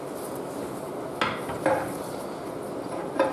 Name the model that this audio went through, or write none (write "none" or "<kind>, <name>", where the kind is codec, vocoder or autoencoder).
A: none